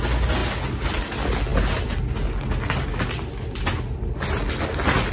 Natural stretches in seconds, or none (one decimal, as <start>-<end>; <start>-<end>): 0.0-5.1